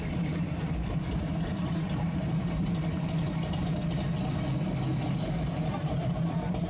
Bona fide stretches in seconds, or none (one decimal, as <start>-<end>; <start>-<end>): 3.8-5.1